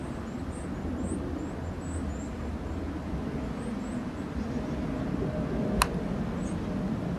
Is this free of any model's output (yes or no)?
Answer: yes